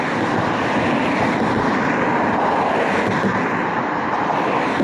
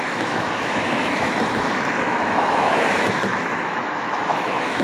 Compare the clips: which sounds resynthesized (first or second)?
second